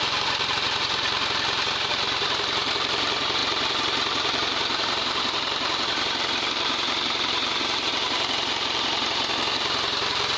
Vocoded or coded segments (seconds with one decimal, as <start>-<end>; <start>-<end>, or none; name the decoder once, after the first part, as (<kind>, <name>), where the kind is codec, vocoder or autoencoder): 0.0-10.4 (vocoder, BigVGAN v2)